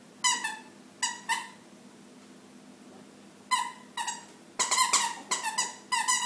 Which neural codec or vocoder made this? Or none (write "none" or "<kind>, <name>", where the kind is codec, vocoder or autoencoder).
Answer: none